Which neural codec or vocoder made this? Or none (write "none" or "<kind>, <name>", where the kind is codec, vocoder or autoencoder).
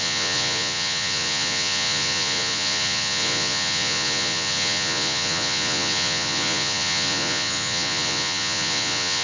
vocoder, Vocos